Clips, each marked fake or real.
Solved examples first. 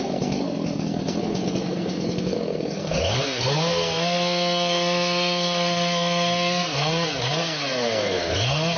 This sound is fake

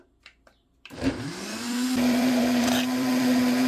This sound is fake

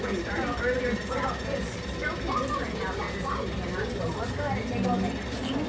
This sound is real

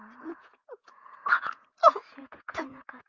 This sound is fake